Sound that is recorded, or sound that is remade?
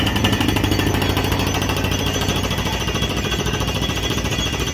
recorded